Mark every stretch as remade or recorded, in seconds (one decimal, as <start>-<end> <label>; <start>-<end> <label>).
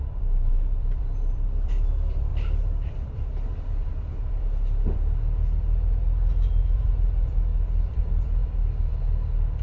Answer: 0.0-9.6 remade